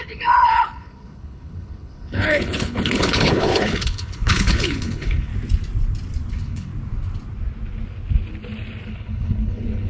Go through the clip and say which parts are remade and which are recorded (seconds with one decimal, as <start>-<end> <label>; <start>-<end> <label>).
0.0-5.3 remade; 5.3-6.3 recorded; 6.3-6.7 remade; 6.7-8.9 recorded; 8.9-9.9 remade

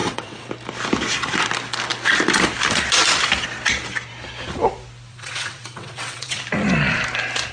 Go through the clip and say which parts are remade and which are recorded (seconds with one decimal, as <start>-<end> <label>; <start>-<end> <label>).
0.0-0.5 remade; 0.5-5.1 recorded; 5.1-6.4 remade; 6.4-7.5 recorded

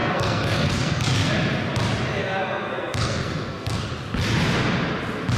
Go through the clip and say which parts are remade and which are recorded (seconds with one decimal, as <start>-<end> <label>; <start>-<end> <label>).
0.0-1.3 remade; 1.3-2.2 recorded; 2.2-3.9 remade; 3.9-5.4 recorded

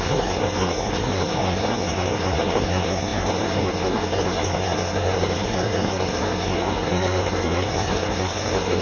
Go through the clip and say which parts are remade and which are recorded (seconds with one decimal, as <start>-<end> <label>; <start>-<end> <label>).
0.0-8.8 remade

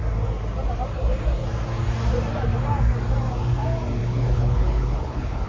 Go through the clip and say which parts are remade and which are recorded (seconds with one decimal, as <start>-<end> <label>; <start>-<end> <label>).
0.0-4.0 recorded; 4.0-5.5 remade

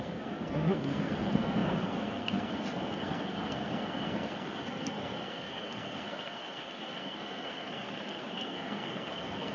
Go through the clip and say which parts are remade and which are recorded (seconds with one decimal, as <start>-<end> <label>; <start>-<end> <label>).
0.0-9.5 remade